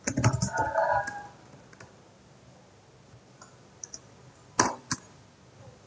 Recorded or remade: recorded